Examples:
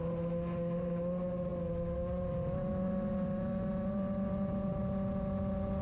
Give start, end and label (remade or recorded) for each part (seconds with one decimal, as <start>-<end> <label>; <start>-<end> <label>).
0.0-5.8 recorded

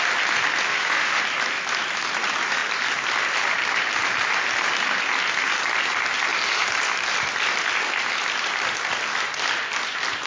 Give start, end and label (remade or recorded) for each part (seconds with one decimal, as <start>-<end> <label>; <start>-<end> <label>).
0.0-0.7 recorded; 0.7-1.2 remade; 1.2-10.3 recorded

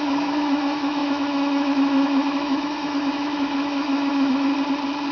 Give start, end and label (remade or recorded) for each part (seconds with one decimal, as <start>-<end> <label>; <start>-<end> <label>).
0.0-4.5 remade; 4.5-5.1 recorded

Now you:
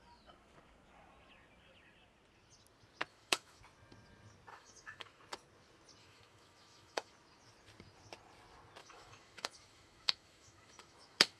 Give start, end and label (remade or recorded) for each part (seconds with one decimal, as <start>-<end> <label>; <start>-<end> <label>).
0.0-3.1 recorded; 3.1-3.6 remade; 3.6-4.5 recorded; 4.5-5.2 remade; 5.2-6.0 recorded; 6.0-7.1 remade; 7.1-8.8 recorded; 8.8-11.4 remade

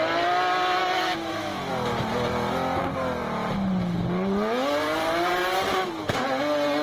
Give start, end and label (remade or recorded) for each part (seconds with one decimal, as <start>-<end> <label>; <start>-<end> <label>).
0.0-0.8 recorded; 0.8-1.7 remade; 1.7-6.8 recorded